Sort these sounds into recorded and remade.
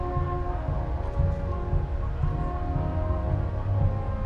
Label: recorded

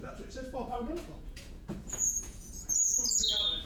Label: remade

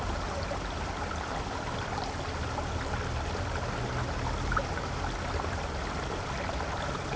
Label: recorded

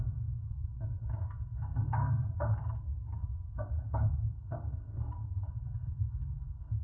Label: remade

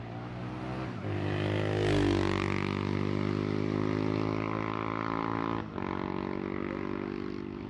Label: recorded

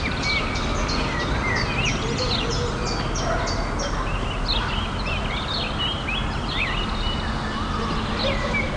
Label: recorded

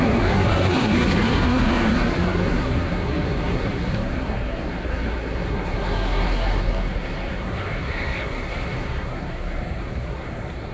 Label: remade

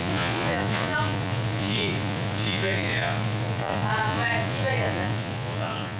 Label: remade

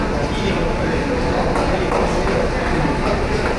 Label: recorded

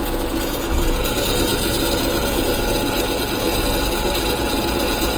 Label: remade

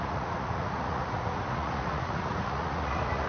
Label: remade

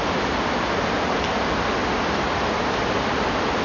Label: recorded